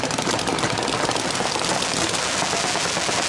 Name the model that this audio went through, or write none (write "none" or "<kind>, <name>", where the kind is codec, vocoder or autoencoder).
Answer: none